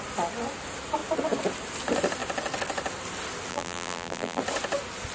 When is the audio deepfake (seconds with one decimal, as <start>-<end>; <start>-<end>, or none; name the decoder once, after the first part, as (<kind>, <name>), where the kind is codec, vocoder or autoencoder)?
3.5-4.4 (vocoder, BigVGAN v2)